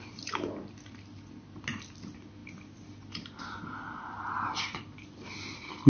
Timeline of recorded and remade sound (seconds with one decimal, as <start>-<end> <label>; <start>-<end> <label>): 0.0-5.9 recorded